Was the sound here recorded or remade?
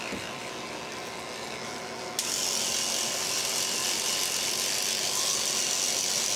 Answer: recorded